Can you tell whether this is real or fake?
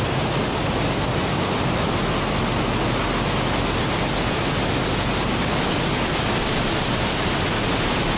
real